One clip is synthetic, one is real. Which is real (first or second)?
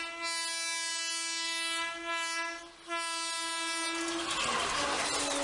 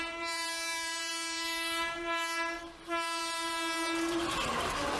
first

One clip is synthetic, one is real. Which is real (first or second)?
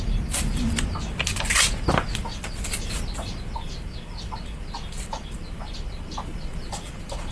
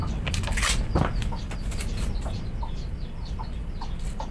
second